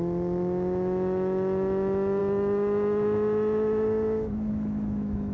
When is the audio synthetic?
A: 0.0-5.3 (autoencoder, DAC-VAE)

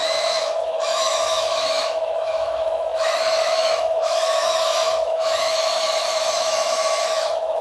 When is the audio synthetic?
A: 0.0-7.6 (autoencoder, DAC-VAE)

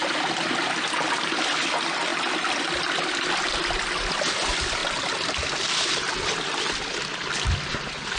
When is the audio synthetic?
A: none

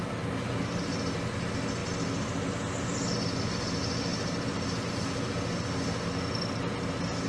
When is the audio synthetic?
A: none